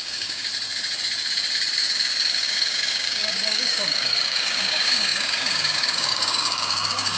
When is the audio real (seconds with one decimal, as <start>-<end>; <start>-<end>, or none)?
0.5-2.3